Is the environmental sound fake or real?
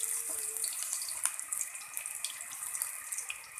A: real